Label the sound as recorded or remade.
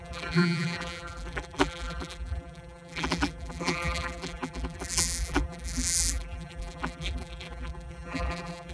remade